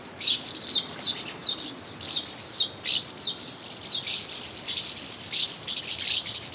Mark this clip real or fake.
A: real